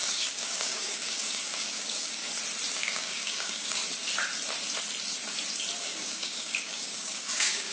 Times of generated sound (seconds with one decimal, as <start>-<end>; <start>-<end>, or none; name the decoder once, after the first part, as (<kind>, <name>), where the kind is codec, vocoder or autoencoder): 0.0-2.2 (codec, DAC); 2.7-3.8; 5.8-7.7